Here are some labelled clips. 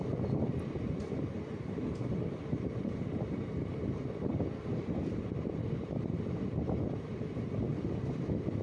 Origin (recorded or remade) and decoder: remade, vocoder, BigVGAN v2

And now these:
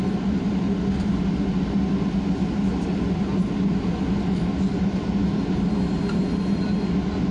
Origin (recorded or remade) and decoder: recorded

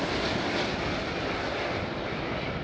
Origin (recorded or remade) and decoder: recorded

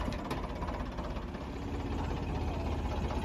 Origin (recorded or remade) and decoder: recorded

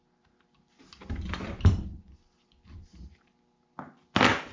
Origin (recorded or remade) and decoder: recorded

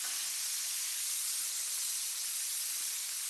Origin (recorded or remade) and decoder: recorded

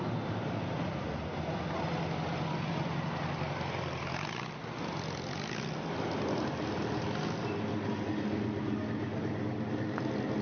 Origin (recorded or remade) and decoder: recorded